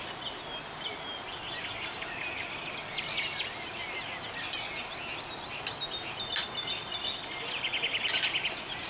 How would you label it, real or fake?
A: real